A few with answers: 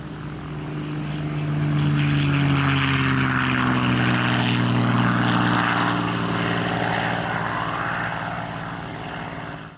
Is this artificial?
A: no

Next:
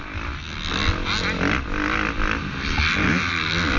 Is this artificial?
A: no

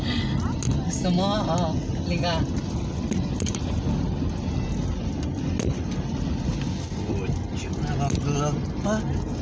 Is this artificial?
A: no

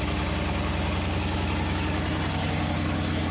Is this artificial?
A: no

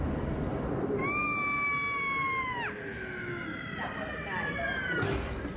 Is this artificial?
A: no